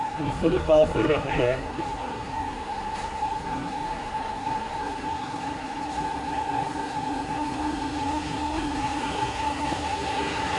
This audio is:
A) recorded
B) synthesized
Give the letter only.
B